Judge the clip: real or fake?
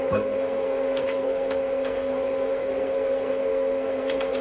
fake